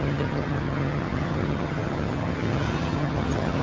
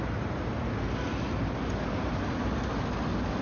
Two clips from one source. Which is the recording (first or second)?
second